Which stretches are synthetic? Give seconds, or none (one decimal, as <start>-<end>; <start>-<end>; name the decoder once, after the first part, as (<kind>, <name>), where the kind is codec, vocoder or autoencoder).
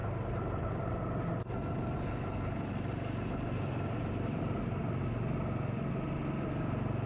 0.0-1.0 (vocoder, BigVGAN v2)